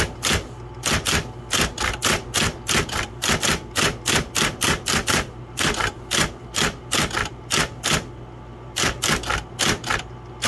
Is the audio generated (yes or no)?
no